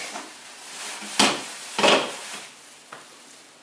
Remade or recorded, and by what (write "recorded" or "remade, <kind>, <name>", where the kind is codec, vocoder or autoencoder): recorded